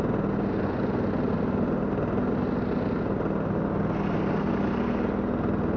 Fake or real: real